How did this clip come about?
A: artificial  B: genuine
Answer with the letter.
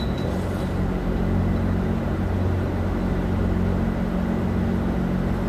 B